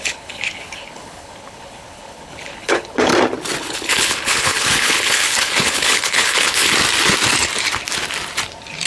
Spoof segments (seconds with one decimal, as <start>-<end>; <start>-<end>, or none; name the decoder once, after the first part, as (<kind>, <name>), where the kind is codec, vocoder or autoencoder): 0.0-3.1 (codec, HILCodec); 3.6-6.7